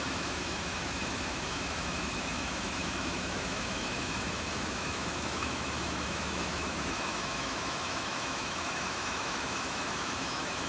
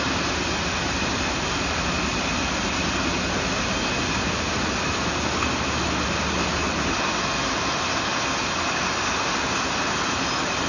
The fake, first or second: first